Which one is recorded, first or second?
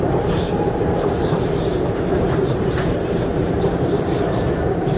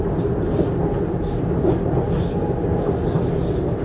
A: second